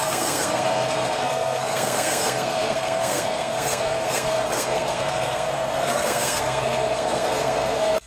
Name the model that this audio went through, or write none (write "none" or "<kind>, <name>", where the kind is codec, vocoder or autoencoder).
codec, SNAC